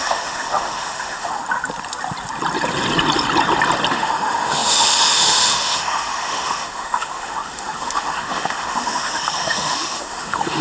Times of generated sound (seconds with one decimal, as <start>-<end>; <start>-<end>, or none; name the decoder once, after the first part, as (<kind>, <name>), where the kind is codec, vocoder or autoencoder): 0.0-1.4 (autoencoder, DAC-VAE); 3.9-10.6